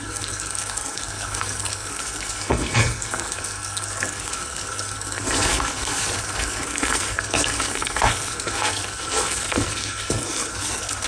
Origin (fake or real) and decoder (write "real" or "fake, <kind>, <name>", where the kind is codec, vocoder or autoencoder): fake, codec, SNAC